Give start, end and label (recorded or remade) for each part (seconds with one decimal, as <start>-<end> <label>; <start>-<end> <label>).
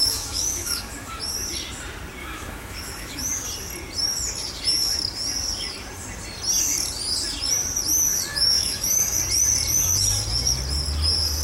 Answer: 0.0-1.2 remade; 1.2-2.2 recorded; 2.2-3.3 remade; 3.3-8.3 recorded; 8.3-9.2 remade; 9.2-11.4 recorded